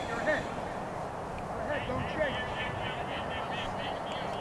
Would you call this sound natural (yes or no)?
yes